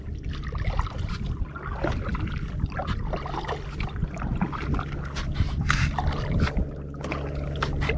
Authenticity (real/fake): real